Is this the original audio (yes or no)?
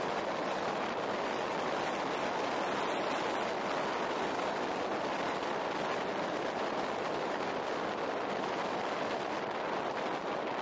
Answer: yes